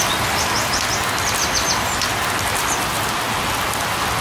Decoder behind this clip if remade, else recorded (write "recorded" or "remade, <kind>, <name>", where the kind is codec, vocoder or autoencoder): recorded